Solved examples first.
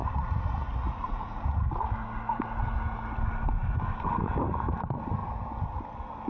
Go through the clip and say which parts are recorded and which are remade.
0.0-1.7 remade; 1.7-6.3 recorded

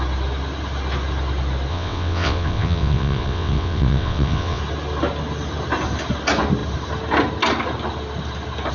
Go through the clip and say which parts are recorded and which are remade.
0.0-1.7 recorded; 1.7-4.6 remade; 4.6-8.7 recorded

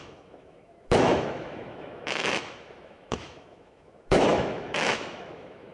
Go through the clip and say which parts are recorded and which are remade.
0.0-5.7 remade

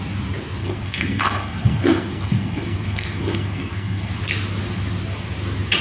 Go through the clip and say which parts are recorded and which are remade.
0.0-0.6 recorded; 0.6-4.1 remade; 4.1-5.8 recorded

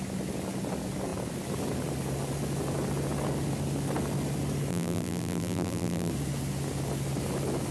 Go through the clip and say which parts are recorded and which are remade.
0.0-4.7 recorded; 4.7-6.1 remade; 6.1-7.7 recorded

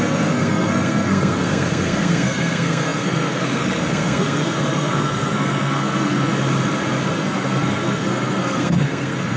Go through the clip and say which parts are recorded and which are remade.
0.0-6.3 remade; 6.3-7.1 recorded; 7.1-9.4 remade

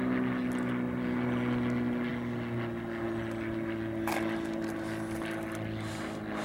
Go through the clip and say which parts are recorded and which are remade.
0.0-6.4 recorded